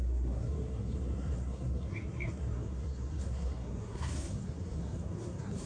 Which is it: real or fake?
fake